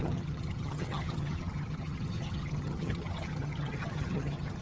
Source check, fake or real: fake